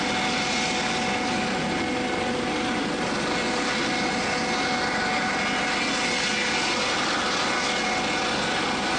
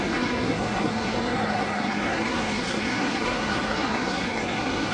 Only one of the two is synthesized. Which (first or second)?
second